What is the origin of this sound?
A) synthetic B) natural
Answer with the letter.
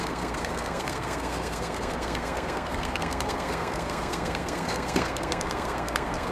A